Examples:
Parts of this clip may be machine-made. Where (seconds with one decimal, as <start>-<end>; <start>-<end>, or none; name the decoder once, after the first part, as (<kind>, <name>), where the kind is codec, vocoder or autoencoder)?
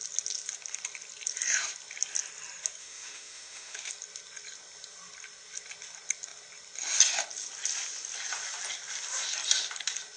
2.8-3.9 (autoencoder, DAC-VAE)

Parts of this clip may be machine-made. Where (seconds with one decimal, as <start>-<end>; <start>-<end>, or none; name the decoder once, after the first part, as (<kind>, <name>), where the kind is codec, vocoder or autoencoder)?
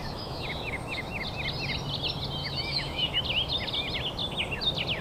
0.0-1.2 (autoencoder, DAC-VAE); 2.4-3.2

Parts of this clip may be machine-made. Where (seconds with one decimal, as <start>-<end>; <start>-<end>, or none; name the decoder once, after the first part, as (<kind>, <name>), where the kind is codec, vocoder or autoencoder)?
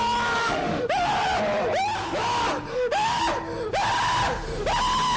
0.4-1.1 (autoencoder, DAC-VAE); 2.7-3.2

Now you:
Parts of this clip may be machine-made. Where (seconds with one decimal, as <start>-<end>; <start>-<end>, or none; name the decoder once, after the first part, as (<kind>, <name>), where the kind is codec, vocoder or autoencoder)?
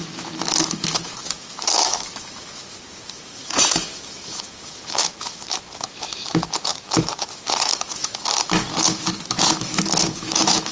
0.0-10.7 (autoencoder, DAC-VAE)